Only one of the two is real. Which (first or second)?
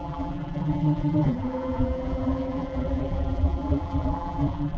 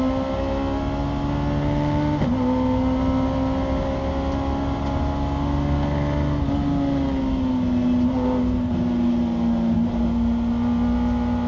second